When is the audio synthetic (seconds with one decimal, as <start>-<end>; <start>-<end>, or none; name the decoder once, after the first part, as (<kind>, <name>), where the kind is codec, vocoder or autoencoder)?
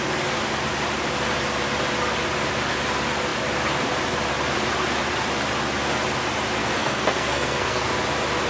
6.6-7.9 (codec, SNAC)